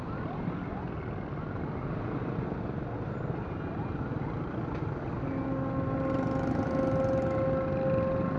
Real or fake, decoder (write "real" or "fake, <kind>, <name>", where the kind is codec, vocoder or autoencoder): real